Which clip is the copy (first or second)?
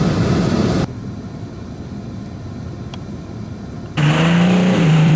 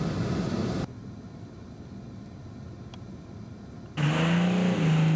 first